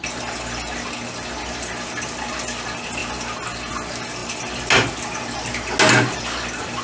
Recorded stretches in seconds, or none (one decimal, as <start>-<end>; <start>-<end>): 0.0-6.8